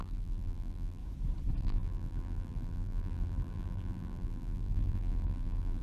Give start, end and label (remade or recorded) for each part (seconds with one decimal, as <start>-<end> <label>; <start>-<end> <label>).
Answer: 0.0-1.0 remade; 1.0-1.6 recorded; 1.6-5.8 remade